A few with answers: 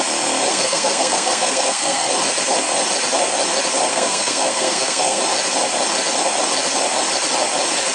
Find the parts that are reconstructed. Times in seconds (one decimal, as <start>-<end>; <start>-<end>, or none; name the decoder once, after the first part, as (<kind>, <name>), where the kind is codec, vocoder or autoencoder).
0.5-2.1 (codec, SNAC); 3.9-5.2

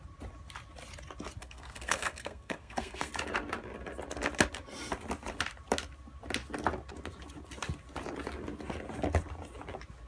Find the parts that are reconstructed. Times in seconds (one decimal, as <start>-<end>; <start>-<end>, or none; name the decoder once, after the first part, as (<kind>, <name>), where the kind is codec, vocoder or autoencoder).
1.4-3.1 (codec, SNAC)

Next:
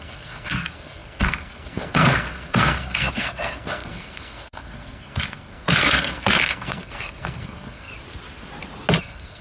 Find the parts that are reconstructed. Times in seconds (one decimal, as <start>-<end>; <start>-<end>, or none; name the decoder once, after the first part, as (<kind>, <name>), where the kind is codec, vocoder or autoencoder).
0.0-7.9 (codec, SNAC); 9.0-9.4

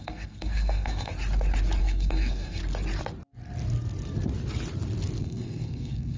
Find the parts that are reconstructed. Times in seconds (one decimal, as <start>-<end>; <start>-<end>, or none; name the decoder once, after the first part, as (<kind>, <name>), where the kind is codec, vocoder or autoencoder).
0.0-1.1 (codec, SNAC); 1.8-2.6; 5.2-6.2

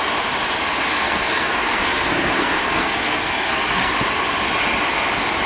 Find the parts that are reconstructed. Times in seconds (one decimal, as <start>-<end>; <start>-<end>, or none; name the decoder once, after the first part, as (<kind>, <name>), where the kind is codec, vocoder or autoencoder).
0.9-3.9 (codec, SNAC)

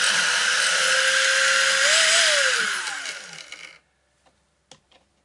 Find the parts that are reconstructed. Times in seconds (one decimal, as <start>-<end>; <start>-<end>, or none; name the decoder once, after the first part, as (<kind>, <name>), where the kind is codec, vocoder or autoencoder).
none

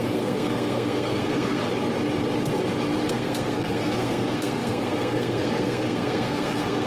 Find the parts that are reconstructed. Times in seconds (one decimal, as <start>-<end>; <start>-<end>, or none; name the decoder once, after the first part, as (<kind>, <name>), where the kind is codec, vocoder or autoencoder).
0.0-1.6 (codec, SNAC); 3.1-6.9